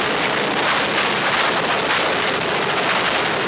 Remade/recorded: recorded